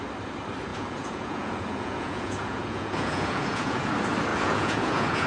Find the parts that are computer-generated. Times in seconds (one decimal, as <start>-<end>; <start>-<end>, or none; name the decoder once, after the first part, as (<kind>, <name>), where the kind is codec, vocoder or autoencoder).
0.7-3.9 (vocoder, Vocos); 4.3-5.3